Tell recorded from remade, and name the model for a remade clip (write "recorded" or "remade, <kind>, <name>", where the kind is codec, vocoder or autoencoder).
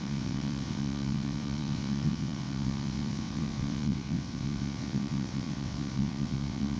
remade, vocoder, WaveNeXt